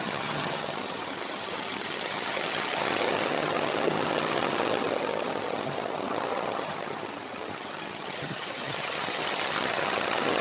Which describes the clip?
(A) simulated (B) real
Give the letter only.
A